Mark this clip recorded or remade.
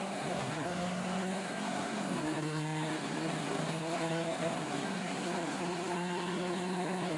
remade